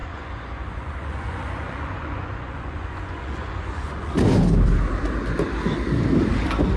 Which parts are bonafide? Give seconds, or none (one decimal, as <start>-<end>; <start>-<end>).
4.1-6.8